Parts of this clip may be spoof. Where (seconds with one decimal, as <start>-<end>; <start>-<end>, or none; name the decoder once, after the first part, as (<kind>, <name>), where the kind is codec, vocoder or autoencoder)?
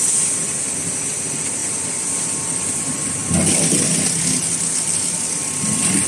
none